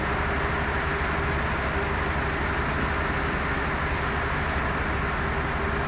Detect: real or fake real